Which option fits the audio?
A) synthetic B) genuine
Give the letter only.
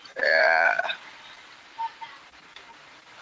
B